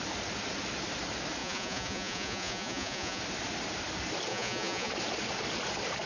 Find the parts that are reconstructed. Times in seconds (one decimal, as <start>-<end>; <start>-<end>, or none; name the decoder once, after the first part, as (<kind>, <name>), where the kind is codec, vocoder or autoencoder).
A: 1.4-3.2 (vocoder, Vocos); 4.3-4.9